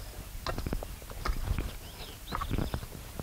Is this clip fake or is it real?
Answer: real